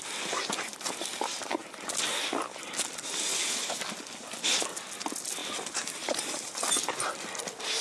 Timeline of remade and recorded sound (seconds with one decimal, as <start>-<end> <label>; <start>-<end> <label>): 0.0-3.3 recorded; 3.3-3.8 remade; 3.8-7.8 recorded